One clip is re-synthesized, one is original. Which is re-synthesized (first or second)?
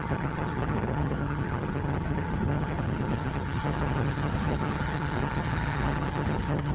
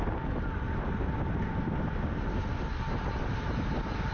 first